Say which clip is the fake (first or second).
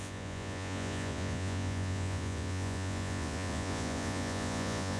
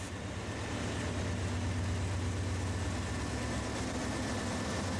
first